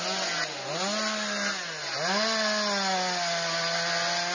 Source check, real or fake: real